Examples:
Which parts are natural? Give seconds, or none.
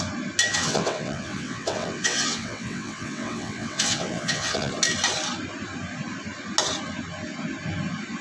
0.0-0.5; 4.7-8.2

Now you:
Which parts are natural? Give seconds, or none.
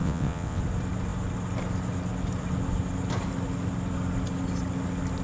0.6-5.2